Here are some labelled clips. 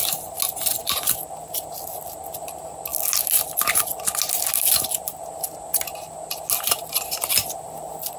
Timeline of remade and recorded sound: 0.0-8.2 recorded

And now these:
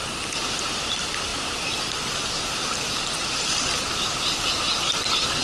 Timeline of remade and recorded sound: 0.0-5.4 recorded